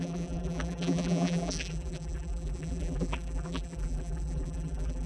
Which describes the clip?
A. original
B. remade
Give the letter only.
B